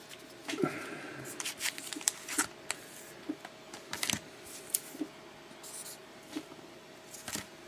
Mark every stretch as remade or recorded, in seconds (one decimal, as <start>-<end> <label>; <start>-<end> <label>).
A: 0.0-6.0 recorded; 6.0-6.9 remade; 6.9-7.7 recorded